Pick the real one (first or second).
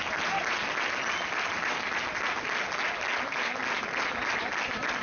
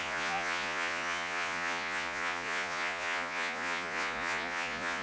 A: first